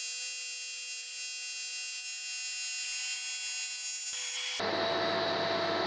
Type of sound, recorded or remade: recorded